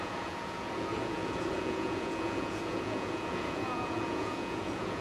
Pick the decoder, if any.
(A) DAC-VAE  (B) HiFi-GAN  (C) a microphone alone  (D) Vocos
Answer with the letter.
D